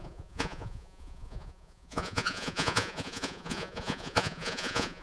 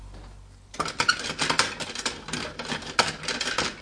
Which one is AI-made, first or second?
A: first